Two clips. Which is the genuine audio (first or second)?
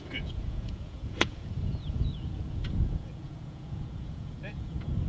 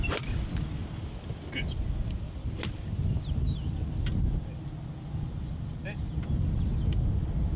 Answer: second